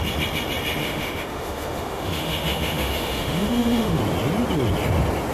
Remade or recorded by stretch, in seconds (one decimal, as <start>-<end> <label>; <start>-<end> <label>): 0.0-0.8 recorded; 0.8-4.0 remade; 4.0-5.3 recorded